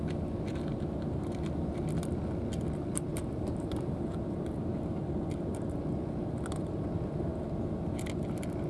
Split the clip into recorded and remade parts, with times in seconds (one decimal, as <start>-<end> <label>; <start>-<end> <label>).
0.0-3.1 recorded; 3.1-4.2 remade; 4.2-8.7 recorded